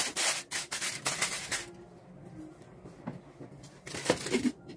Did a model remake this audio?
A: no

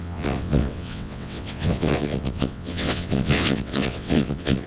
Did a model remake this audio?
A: yes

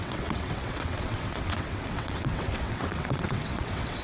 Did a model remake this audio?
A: yes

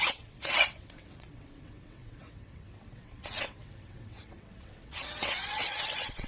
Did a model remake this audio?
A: yes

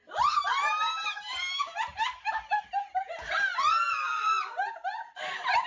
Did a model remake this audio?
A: no